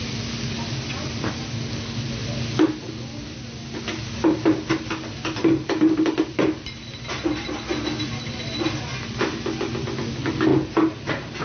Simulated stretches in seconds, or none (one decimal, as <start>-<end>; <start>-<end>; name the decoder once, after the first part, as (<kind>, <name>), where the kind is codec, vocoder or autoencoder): none